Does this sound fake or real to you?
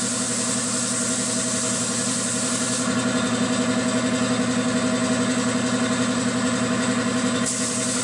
real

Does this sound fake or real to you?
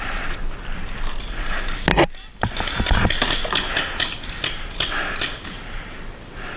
real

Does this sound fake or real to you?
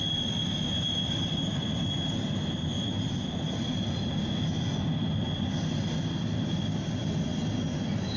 real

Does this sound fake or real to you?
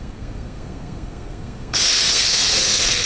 fake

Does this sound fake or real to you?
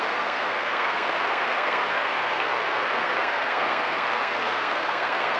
fake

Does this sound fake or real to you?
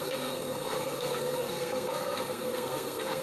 fake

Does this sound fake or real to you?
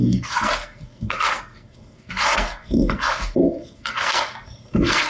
fake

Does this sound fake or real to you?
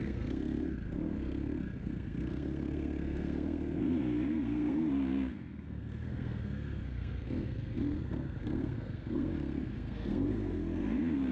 fake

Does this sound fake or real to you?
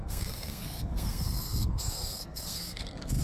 fake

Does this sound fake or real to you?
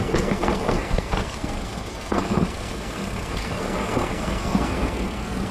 fake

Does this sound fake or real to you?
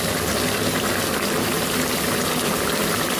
real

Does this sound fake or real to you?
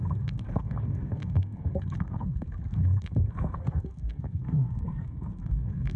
fake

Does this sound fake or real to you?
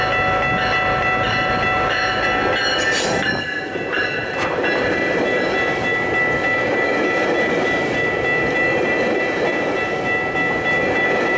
real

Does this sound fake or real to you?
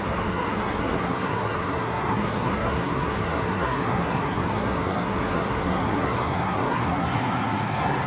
fake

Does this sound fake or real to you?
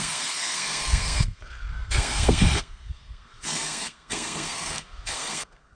fake